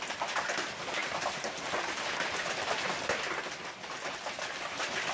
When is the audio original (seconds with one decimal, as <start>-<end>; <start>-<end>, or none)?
0.0-5.1